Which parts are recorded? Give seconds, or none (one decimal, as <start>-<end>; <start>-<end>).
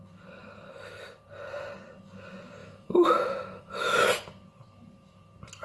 0.0-2.6; 4.1-5.6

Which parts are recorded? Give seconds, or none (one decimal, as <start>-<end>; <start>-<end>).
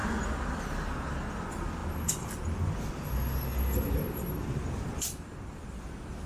0.0-6.3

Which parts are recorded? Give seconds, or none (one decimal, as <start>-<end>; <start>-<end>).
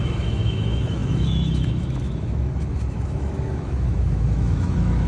none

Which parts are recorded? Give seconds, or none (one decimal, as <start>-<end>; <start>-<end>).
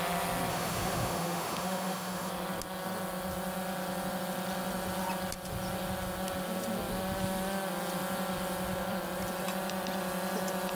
0.0-0.5; 2.3-10.8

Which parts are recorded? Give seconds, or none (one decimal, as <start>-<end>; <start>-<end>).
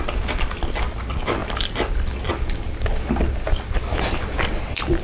0.0-5.0